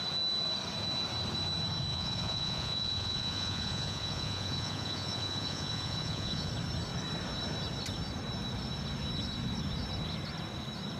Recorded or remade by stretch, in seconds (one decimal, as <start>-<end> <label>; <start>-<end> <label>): 0.0-1.9 recorded; 1.9-6.5 remade; 6.5-11.0 recorded